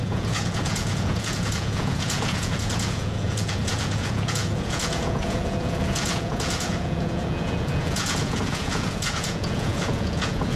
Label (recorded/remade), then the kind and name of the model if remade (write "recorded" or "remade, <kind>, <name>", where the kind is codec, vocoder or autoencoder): remade, vocoder, Vocos